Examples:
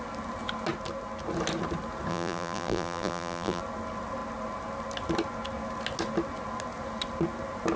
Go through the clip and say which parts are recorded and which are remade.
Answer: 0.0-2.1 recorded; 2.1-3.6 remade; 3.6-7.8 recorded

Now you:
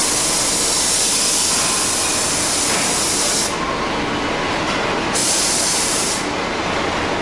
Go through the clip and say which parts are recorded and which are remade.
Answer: 0.0-5.2 recorded; 5.2-6.7 remade; 6.7-7.2 recorded

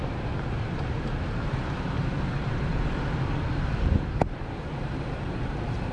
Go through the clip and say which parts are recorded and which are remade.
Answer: 0.0-2.7 remade; 2.7-4.3 recorded; 4.3-5.9 remade

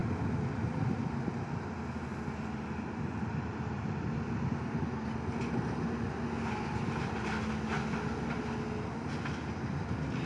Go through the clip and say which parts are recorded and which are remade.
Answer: 0.0-6.7 recorded; 6.7-7.3 remade; 7.3-10.3 recorded

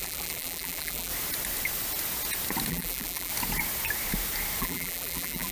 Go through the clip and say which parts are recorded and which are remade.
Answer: 0.0-1.1 remade; 1.1-2.7 recorded; 2.7-3.3 remade; 3.3-4.6 recorded; 4.6-5.5 remade